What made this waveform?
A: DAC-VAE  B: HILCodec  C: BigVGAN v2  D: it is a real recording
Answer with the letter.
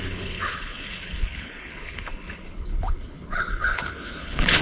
B